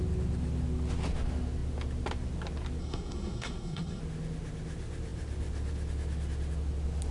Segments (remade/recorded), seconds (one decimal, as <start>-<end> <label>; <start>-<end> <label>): 0.0-2.8 recorded; 2.8-4.0 remade; 4.0-7.1 recorded